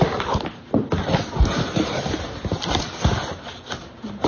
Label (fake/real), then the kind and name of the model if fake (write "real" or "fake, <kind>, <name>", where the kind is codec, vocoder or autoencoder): real